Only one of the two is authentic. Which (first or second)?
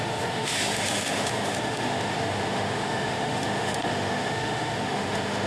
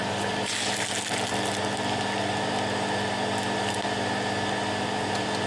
second